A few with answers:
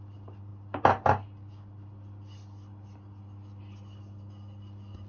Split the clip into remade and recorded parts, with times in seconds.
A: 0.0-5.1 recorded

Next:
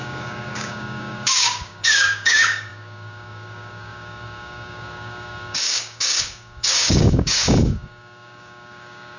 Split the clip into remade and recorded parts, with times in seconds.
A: 0.0-9.2 remade

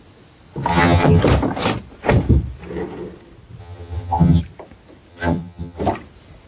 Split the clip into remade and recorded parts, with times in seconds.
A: 0.0-0.7 recorded; 0.7-1.2 remade; 1.2-3.6 recorded; 3.6-4.4 remade; 4.4-5.1 recorded; 5.1-5.8 remade; 5.8-6.5 recorded

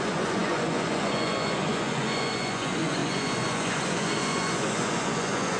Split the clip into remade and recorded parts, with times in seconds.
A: 0.0-5.6 remade

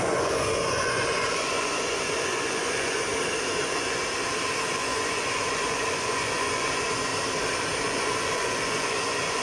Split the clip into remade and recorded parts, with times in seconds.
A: 0.0-3.1 remade; 3.1-3.6 recorded; 3.6-4.0 remade; 4.0-4.7 recorded; 4.7-7.1 remade; 7.1-7.8 recorded; 7.8-9.4 remade

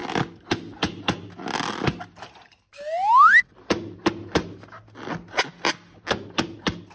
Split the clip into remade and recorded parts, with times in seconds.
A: 0.0-6.9 recorded

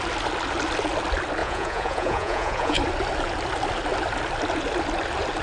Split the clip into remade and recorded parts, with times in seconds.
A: 0.0-1.4 recorded; 1.4-2.8 remade; 2.8-5.4 recorded

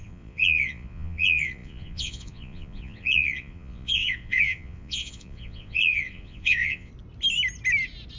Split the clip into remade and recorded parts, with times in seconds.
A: 0.0-6.9 remade; 6.9-8.2 recorded